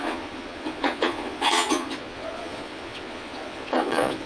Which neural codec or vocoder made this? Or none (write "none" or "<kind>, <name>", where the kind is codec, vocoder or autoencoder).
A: vocoder, Vocos